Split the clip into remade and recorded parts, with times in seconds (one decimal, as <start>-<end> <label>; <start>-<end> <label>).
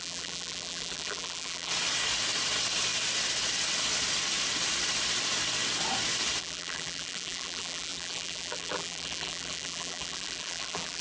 0.0-1.7 remade; 1.7-6.4 recorded; 6.4-11.0 remade